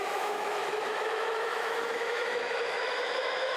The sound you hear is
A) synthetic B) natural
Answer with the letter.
A